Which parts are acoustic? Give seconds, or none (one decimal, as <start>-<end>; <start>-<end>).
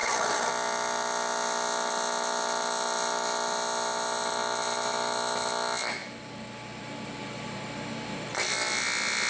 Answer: 0.5-9.3